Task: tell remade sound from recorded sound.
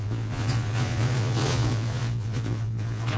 remade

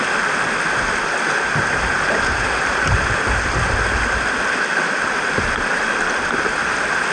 recorded